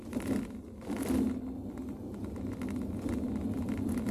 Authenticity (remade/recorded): recorded